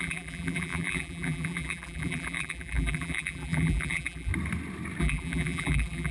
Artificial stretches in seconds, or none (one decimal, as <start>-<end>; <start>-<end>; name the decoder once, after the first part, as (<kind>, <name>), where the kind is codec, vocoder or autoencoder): 0.0-4.3 (vocoder, BigVGAN v2); 5.0-6.1